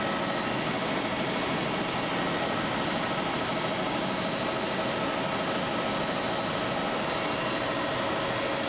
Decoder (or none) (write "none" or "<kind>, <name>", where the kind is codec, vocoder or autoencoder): none